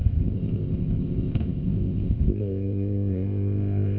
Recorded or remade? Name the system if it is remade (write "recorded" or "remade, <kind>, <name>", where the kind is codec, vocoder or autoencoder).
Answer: remade, codec, ZipCodec